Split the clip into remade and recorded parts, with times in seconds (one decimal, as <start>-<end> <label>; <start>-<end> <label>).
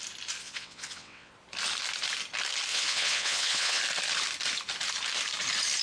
0.0-0.4 recorded; 0.4-1.3 remade; 1.3-2.7 recorded; 2.7-3.8 remade; 3.8-5.8 recorded